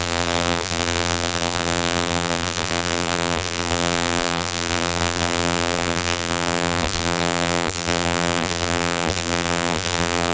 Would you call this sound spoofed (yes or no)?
yes